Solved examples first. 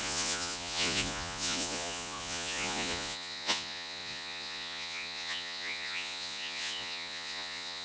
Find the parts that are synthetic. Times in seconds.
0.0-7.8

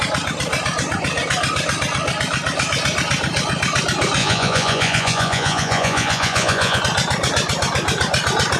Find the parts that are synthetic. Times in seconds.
4.2-6.8